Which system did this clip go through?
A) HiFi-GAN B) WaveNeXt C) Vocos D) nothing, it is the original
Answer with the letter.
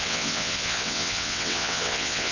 B